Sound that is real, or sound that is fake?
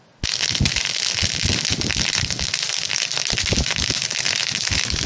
real